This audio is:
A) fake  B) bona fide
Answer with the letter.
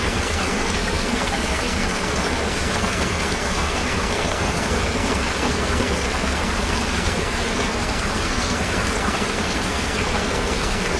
A